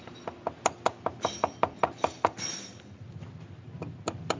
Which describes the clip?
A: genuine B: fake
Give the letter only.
A